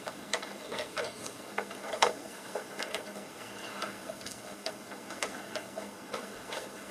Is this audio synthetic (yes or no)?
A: yes